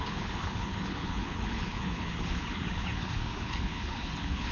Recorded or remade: remade